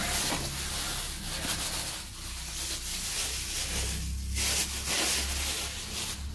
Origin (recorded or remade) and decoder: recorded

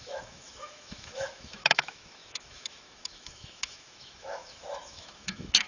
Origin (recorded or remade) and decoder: remade, autoencoder, DAC-VAE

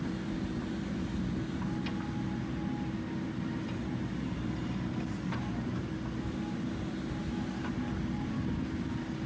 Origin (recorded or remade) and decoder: recorded